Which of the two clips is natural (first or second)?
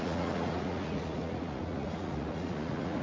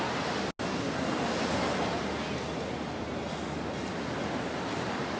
second